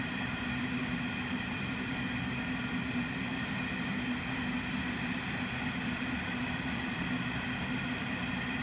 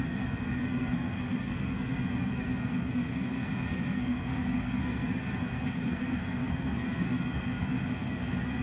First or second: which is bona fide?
first